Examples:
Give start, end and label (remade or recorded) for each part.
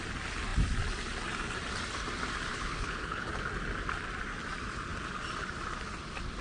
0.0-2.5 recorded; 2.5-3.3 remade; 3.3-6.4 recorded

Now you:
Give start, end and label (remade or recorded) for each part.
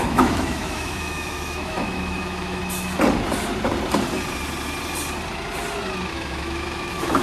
0.0-2.6 remade; 2.6-6.1 recorded; 6.1-7.2 remade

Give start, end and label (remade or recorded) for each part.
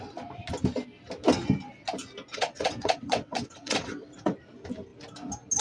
0.0-2.3 recorded; 2.3-4.3 remade; 4.3-5.6 recorded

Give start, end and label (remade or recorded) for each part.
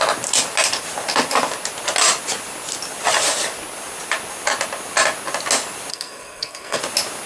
0.0-5.9 recorded; 5.9-6.8 remade; 6.8-7.3 recorded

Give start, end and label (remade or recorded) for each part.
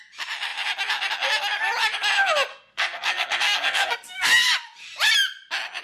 0.0-2.5 recorded; 2.5-4.3 remade; 4.3-5.8 recorded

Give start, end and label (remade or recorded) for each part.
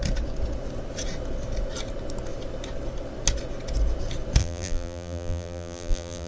0.0-4.4 recorded; 4.4-6.3 remade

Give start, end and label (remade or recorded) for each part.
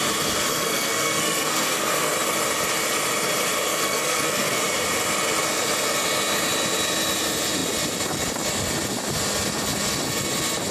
0.0-0.5 recorded; 0.5-2.1 remade; 2.1-3.7 recorded; 3.7-4.6 remade; 4.6-10.7 recorded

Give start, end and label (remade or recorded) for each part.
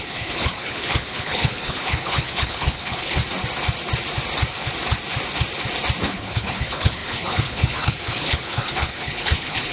0.0-3.2 remade; 3.2-6.0 recorded; 6.0-9.7 remade